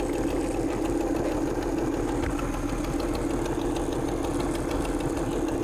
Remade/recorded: recorded